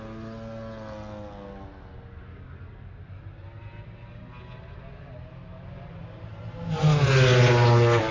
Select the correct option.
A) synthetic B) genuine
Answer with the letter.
B